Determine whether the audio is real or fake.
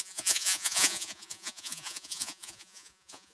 fake